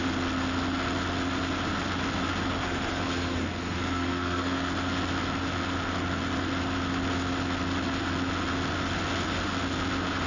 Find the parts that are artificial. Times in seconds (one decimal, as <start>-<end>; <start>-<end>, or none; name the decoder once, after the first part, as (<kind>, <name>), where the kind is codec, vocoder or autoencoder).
2.6-4.7 (codec, SNAC)